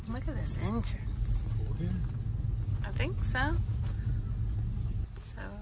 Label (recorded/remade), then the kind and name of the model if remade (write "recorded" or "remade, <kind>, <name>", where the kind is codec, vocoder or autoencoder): recorded